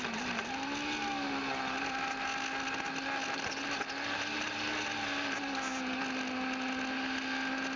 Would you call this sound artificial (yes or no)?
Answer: no